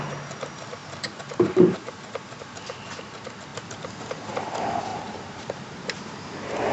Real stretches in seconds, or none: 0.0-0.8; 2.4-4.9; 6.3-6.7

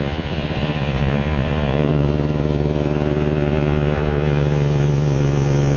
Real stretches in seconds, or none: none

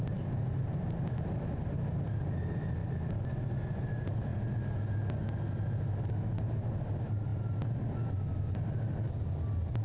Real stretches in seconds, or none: 2.8-3.5; 4.3-6.3; 7.3-8.4